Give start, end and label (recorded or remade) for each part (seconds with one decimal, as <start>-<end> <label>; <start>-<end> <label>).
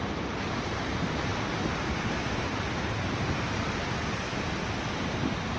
0.0-5.6 recorded